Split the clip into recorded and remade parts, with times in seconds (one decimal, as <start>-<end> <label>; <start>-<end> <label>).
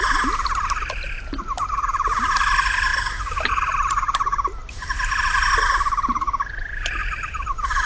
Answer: 0.0-7.0 recorded; 7.0-7.9 remade